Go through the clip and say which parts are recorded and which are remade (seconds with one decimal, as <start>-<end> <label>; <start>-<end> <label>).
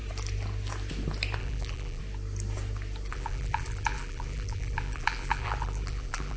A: 0.0-1.4 recorded; 1.4-2.0 remade; 2.0-3.1 recorded; 3.1-6.4 remade